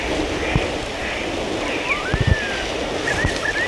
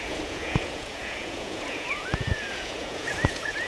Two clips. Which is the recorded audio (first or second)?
first